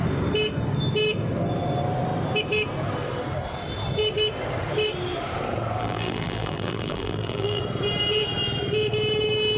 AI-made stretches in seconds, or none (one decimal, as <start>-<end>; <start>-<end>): 5.8-7.6